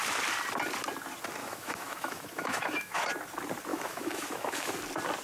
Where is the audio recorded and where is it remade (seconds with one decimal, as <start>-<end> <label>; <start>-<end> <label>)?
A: 0.0-1.4 recorded; 1.4-3.1 remade; 3.1-3.7 recorded; 3.7-4.7 remade; 4.7-5.2 recorded